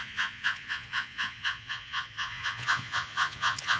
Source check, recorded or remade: remade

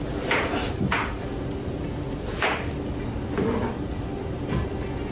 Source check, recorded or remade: recorded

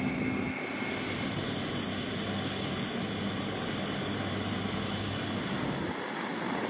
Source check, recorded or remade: recorded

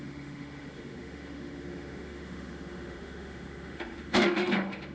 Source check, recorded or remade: remade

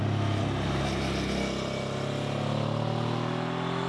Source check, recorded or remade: recorded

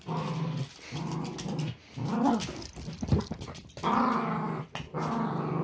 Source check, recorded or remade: recorded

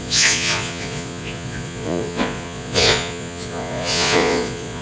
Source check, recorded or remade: remade